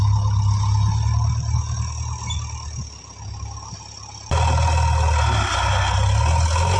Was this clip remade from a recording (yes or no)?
no